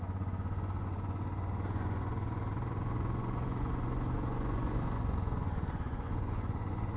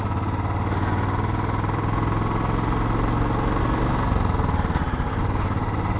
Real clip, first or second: second